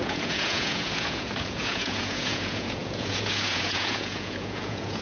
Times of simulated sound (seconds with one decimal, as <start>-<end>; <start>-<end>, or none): 0.0-5.0